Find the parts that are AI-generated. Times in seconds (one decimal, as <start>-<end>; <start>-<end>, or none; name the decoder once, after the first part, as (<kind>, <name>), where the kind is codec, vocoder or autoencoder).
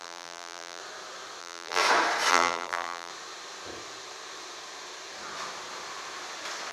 0.0-0.8 (vocoder, BigVGAN v2); 1.4-1.8; 2.3-3.1